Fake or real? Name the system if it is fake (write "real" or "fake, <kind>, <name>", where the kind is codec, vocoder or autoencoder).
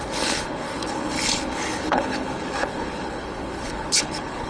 fake, codec, HILCodec